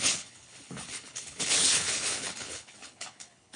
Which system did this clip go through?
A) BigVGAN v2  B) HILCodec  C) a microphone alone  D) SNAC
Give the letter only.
B